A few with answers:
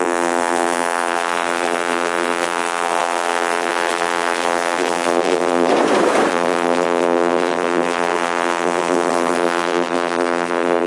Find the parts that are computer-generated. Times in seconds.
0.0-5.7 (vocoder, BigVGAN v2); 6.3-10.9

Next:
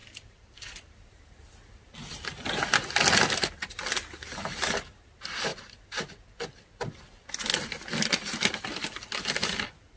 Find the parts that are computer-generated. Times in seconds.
0.0-1.3 (vocoder, BigVGAN v2); 5.5-6.5